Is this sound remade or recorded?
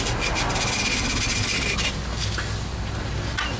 recorded